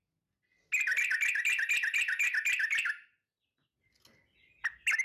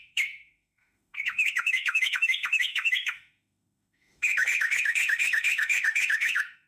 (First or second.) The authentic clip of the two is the first